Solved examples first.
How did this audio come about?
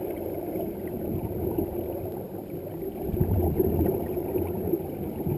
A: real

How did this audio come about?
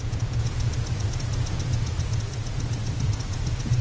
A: fake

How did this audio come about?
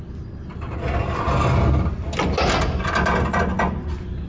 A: real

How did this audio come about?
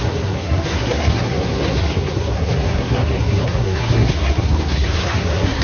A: fake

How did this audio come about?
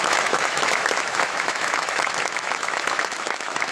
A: fake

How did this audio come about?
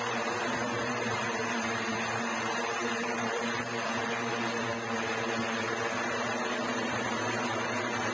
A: fake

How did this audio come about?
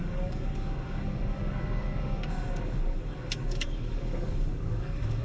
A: fake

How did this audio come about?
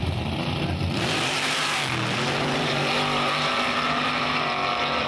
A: fake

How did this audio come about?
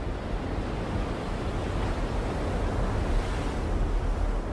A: real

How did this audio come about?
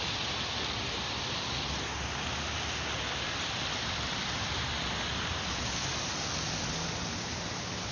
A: real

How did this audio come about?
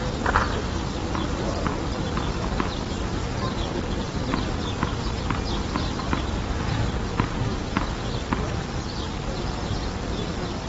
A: real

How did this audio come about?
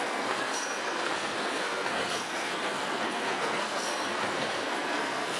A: fake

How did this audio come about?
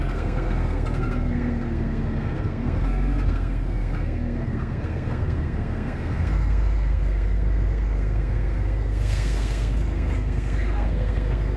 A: fake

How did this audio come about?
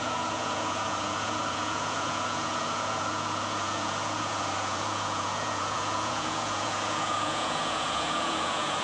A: fake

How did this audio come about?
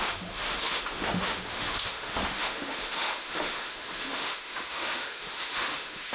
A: fake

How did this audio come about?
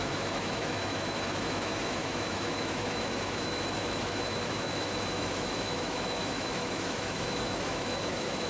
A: fake